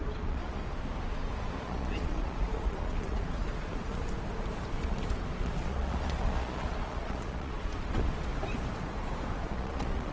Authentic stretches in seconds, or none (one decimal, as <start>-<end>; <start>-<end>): 0.6-1.5; 4.0-4.8; 8.3-9.4